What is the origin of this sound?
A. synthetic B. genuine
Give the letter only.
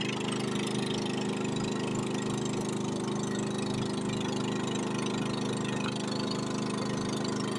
B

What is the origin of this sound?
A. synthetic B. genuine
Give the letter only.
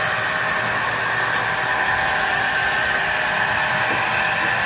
B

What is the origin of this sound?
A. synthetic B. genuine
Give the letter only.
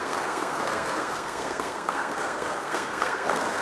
A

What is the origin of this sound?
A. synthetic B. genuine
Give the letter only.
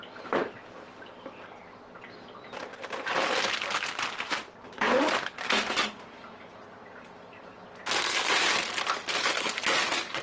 B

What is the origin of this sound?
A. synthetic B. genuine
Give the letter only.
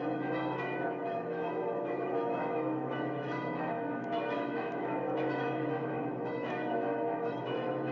A